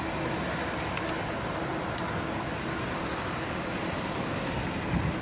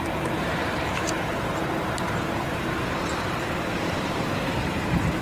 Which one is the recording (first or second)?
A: first